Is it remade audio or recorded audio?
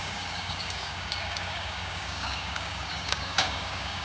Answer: remade